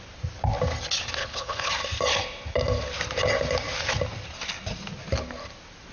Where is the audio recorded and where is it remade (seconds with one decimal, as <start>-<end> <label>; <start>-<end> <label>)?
0.0-1.2 recorded; 1.2-1.7 remade; 1.7-5.9 recorded